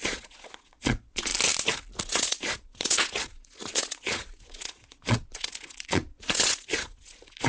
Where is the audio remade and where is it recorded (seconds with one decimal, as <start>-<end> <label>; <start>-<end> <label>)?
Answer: 0.0-1.3 remade; 1.3-2.0 recorded; 2.0-7.5 remade